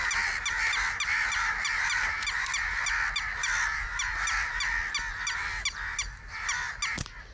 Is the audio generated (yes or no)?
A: no